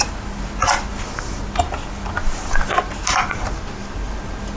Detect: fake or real real